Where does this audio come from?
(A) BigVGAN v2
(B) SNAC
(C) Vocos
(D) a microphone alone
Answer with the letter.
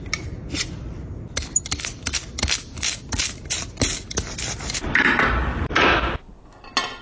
D